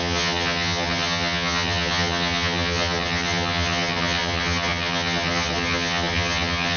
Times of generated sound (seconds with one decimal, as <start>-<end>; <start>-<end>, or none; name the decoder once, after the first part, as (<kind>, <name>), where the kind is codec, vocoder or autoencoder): 0.0-6.8 (vocoder, HiFi-GAN)

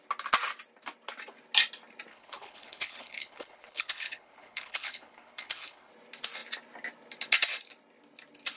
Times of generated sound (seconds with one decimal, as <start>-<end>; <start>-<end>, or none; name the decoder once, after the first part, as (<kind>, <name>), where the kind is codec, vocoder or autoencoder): 2.1-5.9 (codec, HILCodec)

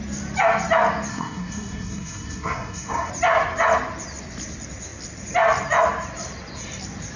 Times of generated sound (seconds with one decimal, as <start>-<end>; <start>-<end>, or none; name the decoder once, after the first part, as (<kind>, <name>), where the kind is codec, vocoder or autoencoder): 1.1-3.1 (codec, SNAC)

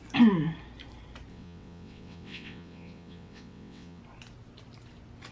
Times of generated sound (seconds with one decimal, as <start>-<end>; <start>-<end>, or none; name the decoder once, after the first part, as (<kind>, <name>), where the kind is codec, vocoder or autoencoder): 1.3-4.0 (vocoder, WaveNeXt)

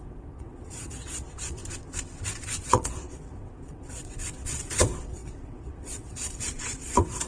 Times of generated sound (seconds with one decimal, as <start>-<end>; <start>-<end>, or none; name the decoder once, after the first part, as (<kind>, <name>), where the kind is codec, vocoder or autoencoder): 0.0-1.6 (vocoder, WaveNeXt); 2.6-7.3

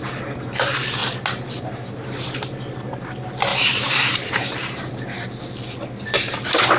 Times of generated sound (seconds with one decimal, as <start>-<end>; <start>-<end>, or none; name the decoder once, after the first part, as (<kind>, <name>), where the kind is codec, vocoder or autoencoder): 1.0-2.1 (vocoder, BigVGAN v2); 3.5-4.8